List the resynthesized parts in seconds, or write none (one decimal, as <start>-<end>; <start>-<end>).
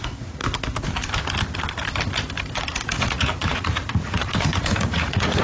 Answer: 0.0-0.4; 2.5-5.4